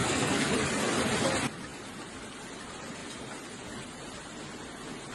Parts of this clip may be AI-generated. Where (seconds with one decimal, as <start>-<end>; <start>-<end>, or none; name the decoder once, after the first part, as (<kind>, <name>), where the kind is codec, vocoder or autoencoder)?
0.0-0.5 (codec, SNAC)